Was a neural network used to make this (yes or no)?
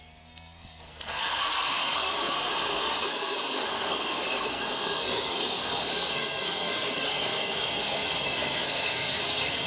yes